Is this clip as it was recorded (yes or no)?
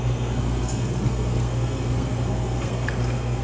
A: no